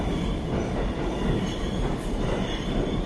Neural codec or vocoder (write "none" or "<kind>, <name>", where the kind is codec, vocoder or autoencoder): vocoder, BigVGAN v2